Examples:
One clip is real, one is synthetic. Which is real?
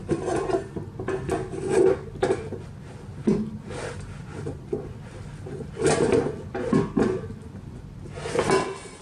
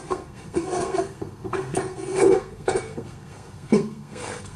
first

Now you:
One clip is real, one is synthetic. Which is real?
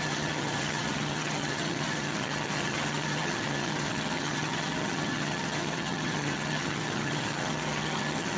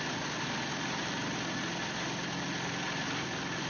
second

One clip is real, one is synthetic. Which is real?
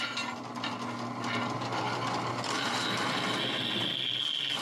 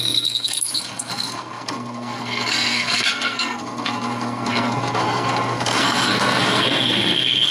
first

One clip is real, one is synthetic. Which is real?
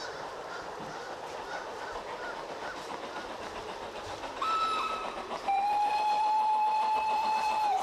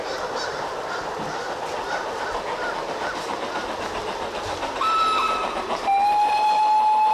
second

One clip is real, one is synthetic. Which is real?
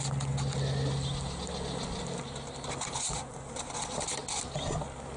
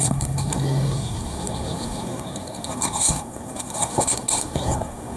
first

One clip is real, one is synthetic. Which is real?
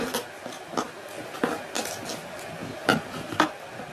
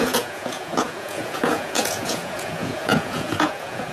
first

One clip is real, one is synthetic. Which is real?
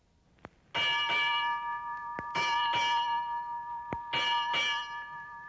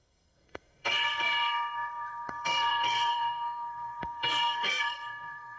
first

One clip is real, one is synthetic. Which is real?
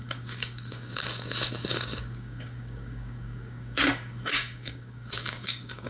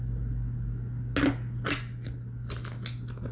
second